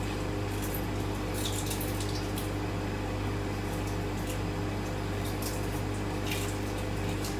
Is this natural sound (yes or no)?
yes